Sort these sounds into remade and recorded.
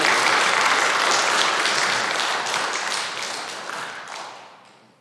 recorded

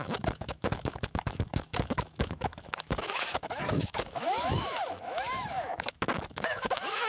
remade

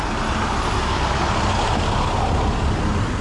recorded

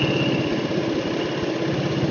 recorded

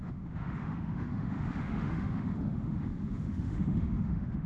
remade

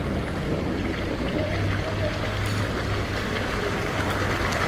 recorded